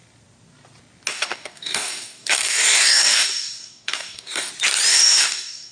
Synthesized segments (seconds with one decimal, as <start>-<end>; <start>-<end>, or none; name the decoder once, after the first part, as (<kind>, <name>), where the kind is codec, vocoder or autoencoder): 1.1-4.5 (codec, DAC); 4.9-5.7